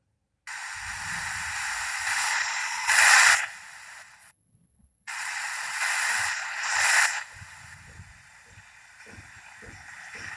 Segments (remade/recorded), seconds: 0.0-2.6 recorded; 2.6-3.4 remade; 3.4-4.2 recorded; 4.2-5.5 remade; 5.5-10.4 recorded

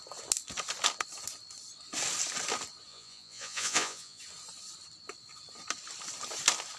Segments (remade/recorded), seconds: 0.0-2.9 recorded; 2.9-4.2 remade; 4.2-6.8 recorded

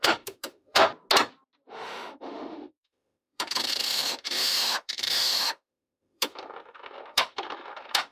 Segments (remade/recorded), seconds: 0.0-0.9 remade; 0.9-1.7 recorded; 1.7-8.1 remade